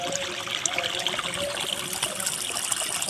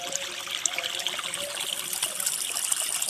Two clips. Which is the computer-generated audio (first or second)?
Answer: second